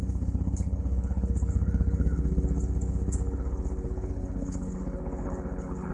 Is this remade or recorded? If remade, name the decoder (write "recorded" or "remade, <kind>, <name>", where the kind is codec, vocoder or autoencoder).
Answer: remade, codec, HILCodec